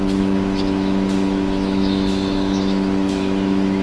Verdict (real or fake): fake